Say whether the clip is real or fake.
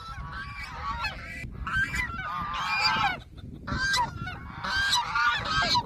real